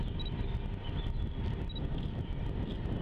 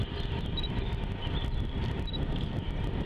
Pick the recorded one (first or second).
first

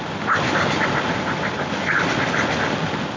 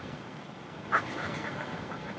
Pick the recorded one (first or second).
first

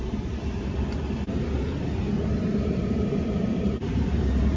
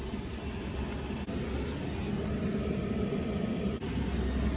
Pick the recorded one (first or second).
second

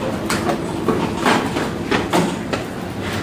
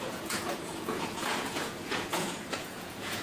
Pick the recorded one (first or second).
first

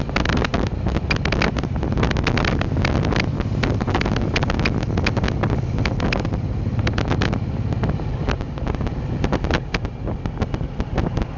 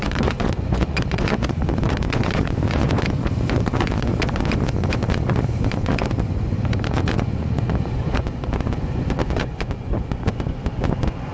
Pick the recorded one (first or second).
first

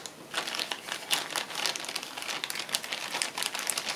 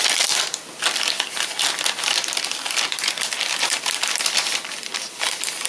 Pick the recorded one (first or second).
first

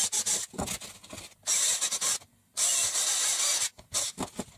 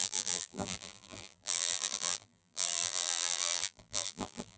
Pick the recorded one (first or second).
first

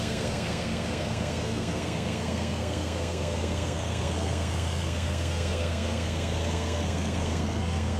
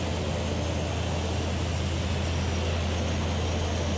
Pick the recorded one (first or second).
second